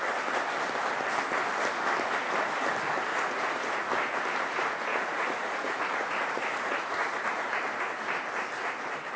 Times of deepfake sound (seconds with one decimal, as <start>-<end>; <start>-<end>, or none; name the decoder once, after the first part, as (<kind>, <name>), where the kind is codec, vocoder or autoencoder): 3.1-3.9 (vocoder, Vocos); 4.9-7.1